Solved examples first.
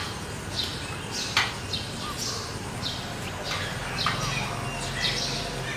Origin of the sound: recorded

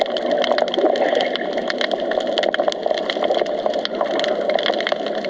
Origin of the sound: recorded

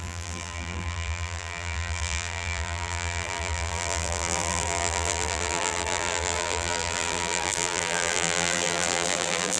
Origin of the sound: remade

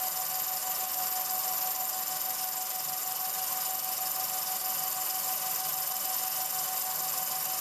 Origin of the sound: recorded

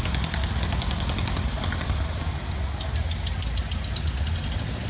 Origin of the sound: recorded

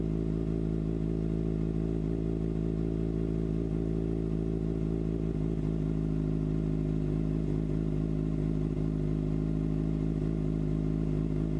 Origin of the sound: recorded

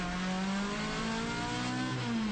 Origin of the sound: recorded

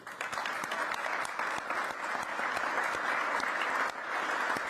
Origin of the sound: recorded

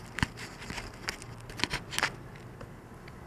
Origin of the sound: recorded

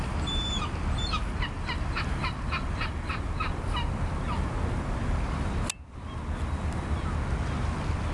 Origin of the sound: recorded